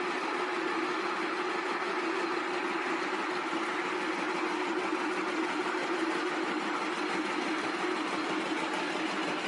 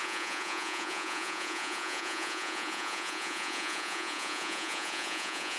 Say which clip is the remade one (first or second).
second